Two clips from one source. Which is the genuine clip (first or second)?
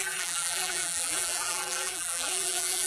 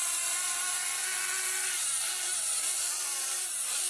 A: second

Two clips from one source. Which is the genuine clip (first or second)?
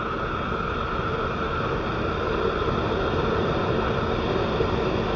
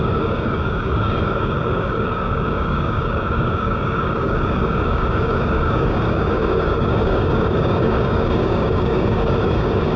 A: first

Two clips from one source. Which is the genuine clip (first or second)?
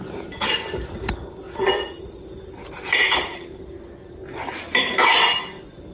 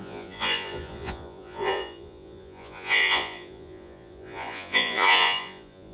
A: first